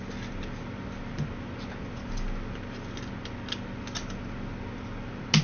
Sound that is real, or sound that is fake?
real